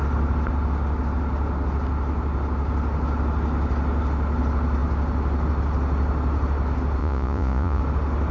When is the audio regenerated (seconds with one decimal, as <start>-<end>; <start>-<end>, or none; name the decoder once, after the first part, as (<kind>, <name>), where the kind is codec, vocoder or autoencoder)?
7.0-7.8 (vocoder, Vocos)